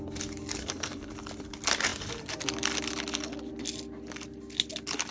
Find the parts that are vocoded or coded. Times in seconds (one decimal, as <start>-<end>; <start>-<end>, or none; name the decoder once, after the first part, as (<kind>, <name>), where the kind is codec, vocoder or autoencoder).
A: 0.6-1.1 (codec, SNAC)